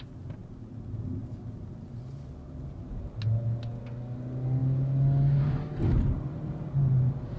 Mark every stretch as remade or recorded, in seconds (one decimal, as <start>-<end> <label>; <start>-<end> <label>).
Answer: 0.0-7.4 recorded